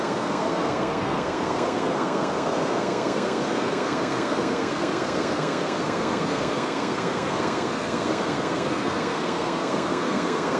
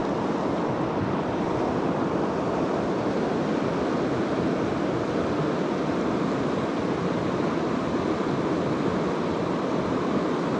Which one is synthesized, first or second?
first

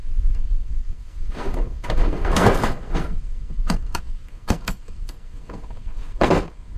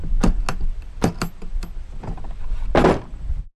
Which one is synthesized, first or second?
first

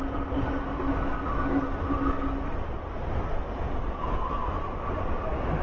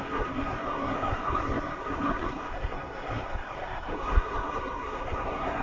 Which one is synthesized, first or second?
second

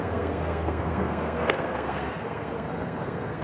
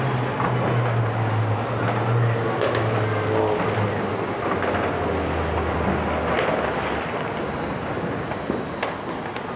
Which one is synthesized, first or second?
first